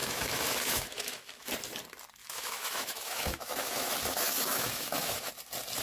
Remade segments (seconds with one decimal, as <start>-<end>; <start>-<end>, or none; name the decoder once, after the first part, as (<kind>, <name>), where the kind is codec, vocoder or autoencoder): 0.0-1.5 (autoencoder, DAC-VAE); 2.2-5.3